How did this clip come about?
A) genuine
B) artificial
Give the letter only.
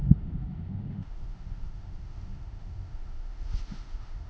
B